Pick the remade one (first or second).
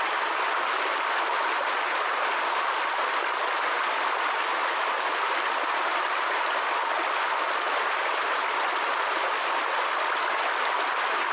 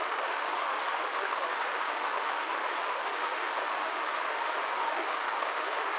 second